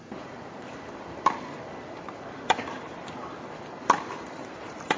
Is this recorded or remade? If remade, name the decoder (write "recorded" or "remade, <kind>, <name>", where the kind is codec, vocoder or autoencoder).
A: remade, vocoder, BigVGAN v2